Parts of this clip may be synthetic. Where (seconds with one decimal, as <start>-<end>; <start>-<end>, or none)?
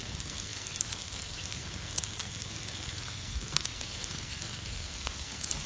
0.0-5.7